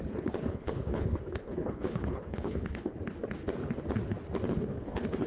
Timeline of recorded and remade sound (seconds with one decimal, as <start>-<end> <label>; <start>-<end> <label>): 0.0-0.5 recorded; 0.5-3.0 remade; 3.0-4.5 recorded; 4.5-5.3 remade